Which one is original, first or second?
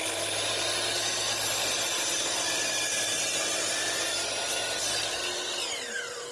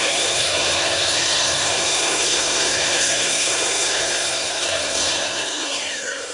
first